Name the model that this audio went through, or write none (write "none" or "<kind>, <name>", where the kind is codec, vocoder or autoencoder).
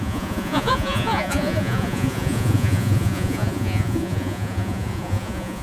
vocoder, Vocos